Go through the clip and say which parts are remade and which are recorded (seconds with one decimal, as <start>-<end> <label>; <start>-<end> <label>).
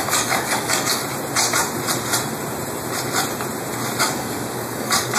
0.0-1.0 remade; 1.0-4.0 recorded; 4.0-5.2 remade